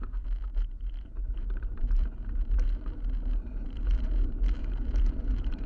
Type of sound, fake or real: fake